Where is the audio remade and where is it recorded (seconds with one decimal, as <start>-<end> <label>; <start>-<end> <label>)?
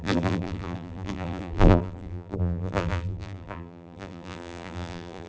0.0-5.3 remade